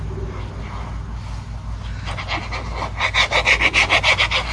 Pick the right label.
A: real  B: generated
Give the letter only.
A